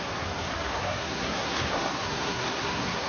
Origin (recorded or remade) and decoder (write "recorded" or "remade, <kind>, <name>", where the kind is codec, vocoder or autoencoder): remade, codec, SNAC